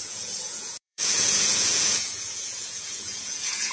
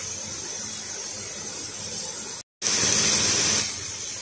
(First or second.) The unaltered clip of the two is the second